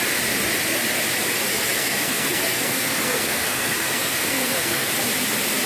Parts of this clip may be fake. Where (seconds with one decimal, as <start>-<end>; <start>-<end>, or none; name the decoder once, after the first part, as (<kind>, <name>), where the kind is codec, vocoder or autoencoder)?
1.5-4.9 (codec, SNAC)